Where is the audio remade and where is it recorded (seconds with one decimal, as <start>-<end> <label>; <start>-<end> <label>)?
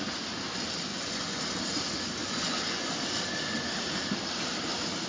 0.0-0.9 recorded; 0.9-1.4 remade; 1.4-2.2 recorded; 2.2-2.9 remade; 2.9-5.1 recorded